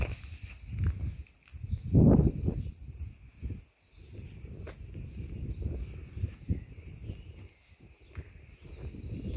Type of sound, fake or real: real